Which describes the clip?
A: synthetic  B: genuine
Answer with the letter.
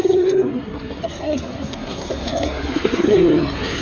A